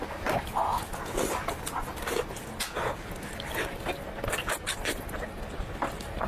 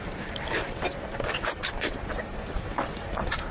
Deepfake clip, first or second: second